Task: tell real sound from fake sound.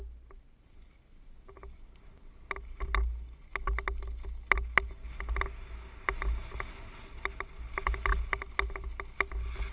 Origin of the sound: real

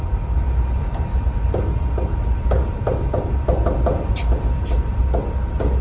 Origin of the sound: real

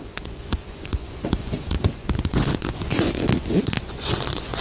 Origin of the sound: fake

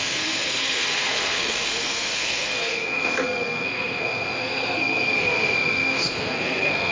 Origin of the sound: fake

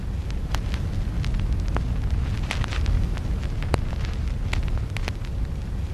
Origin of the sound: real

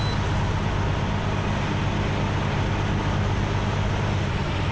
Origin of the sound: real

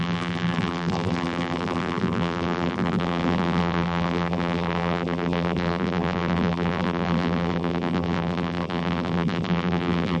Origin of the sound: fake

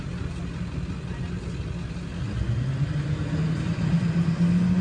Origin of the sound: real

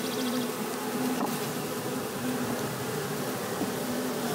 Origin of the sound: real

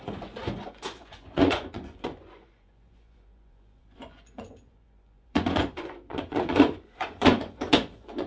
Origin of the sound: fake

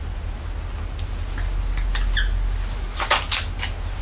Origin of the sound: real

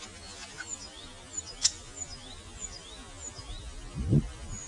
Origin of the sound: real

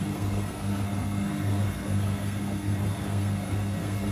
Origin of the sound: fake